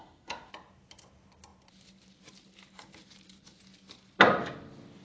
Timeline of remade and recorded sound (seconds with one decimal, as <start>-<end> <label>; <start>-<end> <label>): 0.0-0.5 remade; 0.5-5.0 recorded